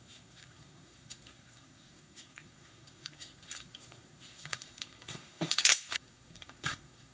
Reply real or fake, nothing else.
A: fake